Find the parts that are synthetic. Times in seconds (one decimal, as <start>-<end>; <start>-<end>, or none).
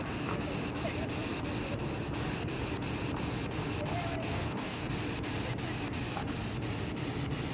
4.2-4.9